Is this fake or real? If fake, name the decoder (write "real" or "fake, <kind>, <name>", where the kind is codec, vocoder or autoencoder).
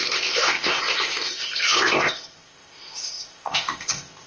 fake, codec, ZipCodec